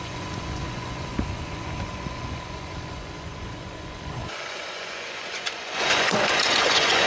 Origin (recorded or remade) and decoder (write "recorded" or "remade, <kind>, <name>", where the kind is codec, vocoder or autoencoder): remade, vocoder, Vocos